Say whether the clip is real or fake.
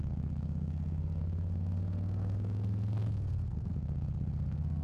fake